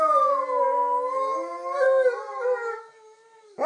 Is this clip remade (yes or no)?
no